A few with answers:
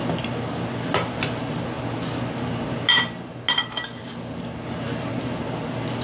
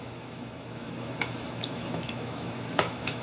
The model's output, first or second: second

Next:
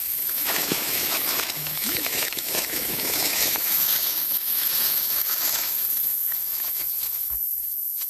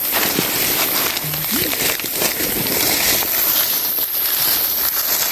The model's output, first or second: first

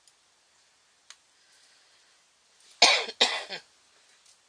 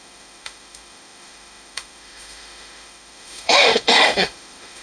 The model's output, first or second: second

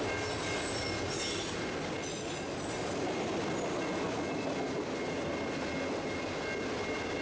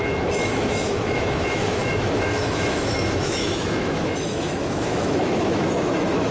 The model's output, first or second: second